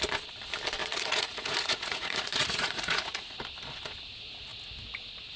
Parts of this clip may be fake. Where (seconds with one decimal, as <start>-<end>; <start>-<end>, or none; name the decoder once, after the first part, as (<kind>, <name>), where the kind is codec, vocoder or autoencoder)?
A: 0.8-3.4 (vocoder, Vocos)